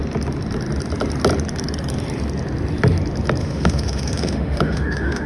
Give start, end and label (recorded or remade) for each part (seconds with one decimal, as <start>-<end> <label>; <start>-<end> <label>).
0.0-3.4 recorded; 3.4-5.3 remade